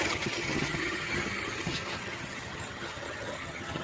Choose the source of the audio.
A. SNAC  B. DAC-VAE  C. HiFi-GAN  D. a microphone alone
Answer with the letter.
C